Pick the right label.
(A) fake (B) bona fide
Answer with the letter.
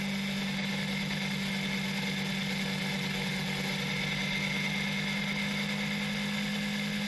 B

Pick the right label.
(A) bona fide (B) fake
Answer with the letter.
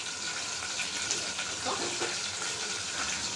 B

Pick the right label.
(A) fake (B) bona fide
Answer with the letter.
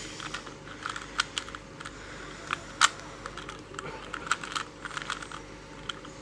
B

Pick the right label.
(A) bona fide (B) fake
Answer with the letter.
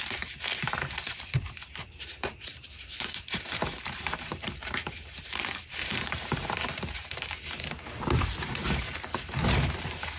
B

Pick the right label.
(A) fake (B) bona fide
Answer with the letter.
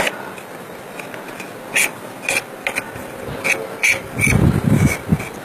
B